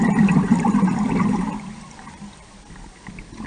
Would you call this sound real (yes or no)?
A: yes